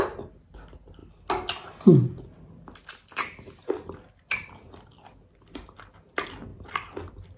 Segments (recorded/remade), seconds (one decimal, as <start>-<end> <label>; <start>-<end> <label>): 0.0-7.4 recorded